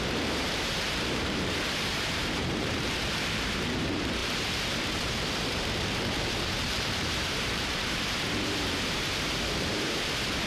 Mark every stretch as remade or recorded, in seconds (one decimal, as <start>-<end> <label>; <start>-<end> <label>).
0.0-10.5 remade